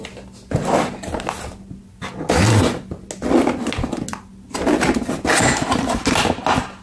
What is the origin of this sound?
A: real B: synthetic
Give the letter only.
A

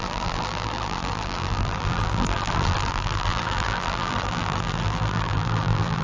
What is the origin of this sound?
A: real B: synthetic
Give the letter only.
B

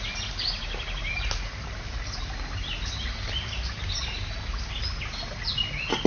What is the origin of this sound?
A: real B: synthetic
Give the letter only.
A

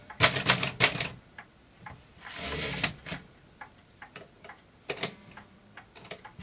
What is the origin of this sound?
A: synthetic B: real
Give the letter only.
A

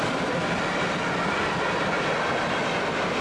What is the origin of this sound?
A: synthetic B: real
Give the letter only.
B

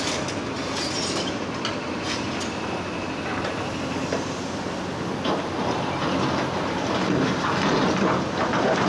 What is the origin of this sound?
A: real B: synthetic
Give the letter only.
A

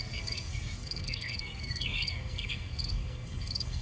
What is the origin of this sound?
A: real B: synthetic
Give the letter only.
B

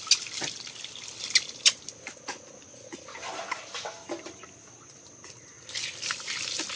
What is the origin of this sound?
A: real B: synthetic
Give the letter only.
A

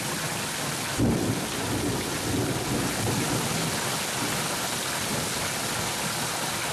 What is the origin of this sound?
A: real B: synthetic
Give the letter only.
A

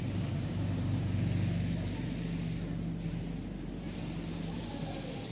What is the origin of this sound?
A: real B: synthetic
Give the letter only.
A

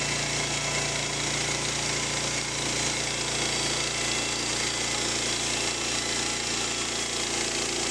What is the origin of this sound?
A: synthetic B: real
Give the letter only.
B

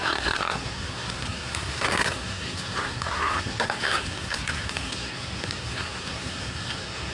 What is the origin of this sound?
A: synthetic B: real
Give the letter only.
A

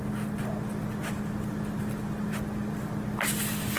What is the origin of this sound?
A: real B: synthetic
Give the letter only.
A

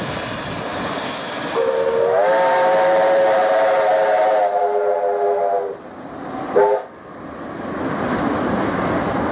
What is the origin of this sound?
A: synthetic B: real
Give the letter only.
B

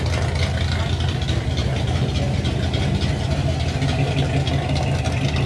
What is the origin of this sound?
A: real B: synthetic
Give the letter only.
A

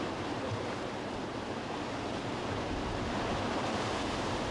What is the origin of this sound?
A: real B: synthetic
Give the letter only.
B